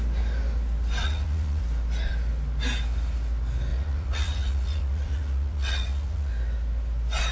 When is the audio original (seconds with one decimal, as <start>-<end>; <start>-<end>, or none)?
0.0-1.0; 1.6-3.7; 6.3-7.3